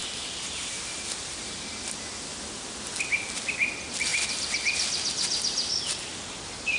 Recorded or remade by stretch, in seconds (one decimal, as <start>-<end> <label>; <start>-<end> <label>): 0.0-6.8 recorded